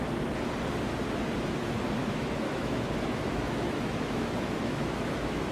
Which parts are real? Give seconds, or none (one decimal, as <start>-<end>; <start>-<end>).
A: 0.0-2.0